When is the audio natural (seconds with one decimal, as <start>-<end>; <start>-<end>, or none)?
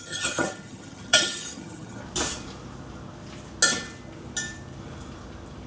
2.0-5.7